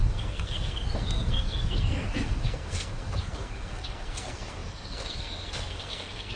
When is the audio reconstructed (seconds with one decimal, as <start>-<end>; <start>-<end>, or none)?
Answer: 0.0-6.4